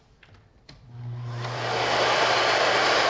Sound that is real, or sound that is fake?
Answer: fake